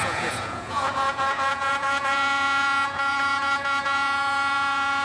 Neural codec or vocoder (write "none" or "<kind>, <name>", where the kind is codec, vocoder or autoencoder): vocoder, Vocos